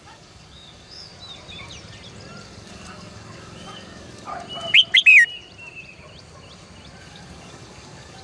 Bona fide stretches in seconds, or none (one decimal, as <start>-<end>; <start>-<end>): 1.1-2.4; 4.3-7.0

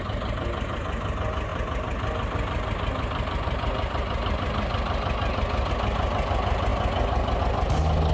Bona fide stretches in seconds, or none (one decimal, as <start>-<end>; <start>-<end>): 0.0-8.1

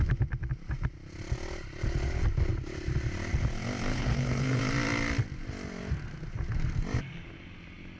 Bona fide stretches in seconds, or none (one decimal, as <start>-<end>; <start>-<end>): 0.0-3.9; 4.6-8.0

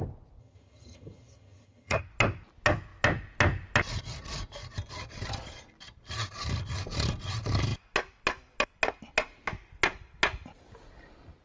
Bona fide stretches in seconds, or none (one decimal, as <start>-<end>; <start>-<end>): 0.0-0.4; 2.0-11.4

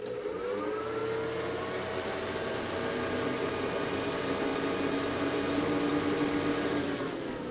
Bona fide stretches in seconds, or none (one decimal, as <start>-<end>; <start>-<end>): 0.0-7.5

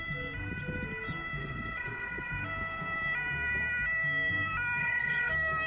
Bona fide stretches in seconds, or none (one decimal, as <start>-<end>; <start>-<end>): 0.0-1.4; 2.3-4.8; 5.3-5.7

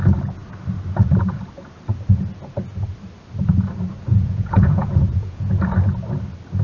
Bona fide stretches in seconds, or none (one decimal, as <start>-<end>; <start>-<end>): 0.0-4.1; 5.5-6.6